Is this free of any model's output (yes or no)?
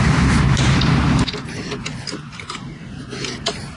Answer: no